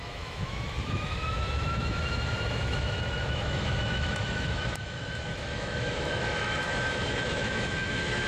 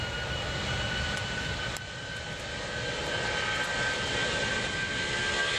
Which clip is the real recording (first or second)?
second